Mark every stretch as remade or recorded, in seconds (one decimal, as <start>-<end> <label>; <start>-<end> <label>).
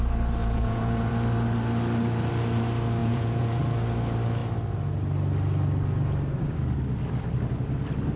0.0-0.4 recorded; 0.4-1.1 remade; 1.1-3.0 recorded; 3.0-3.6 remade; 3.6-8.2 recorded